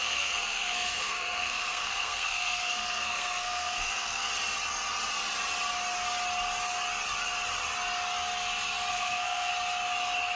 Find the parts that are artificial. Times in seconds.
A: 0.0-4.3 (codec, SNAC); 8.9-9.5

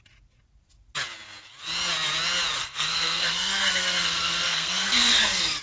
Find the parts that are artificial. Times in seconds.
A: 2.6-5.6 (codec, SNAC)

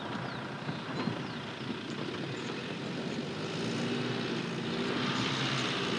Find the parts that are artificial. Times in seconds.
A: none

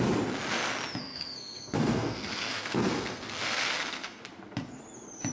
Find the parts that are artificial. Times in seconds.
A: 1.0-4.2 (codec, SNAC)